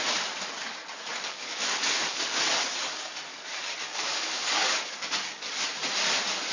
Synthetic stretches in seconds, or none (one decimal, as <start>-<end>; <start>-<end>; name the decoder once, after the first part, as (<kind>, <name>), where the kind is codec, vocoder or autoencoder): 1.1-2.4 (codec, DAC); 3.3-5.5